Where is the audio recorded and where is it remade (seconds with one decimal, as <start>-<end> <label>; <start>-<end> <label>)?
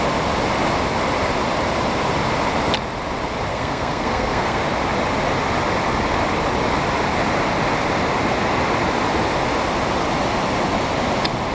0.0-3.5 recorded; 3.5-4.6 remade; 4.6-11.5 recorded